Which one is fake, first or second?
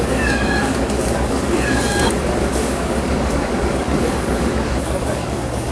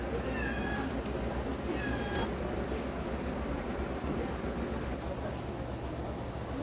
first